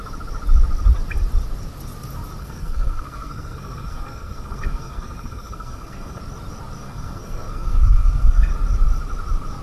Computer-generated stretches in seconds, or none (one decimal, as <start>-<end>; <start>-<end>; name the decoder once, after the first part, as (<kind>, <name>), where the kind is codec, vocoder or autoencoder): 2.4-6.2 (codec, SNAC); 6.8-8.5